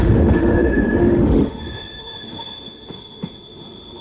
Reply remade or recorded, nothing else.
remade